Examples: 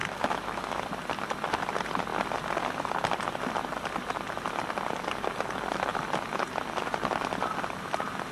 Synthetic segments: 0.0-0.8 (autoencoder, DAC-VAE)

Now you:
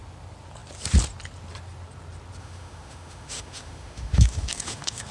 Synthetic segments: 2.4-5.1 (autoencoder, DAC-VAE)

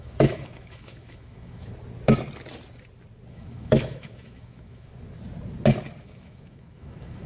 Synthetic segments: 0.0-1.7 (autoencoder, DAC-VAE); 3.3-4.9; 6.0-7.3